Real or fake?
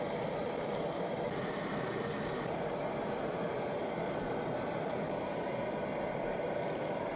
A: real